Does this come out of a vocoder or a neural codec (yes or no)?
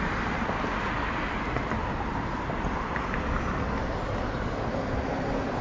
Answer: no